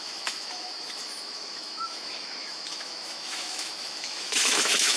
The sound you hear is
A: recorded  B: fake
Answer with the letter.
B